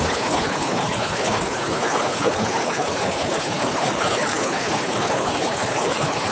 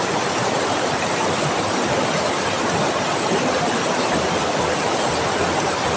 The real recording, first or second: second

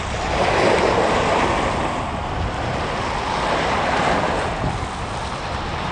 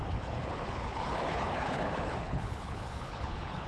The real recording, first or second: first